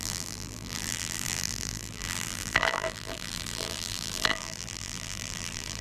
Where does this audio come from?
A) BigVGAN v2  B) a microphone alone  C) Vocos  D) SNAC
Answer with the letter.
A